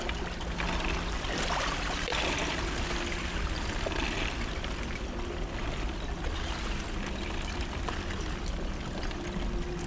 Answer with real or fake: real